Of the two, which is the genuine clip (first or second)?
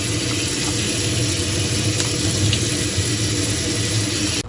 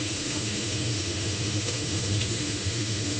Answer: first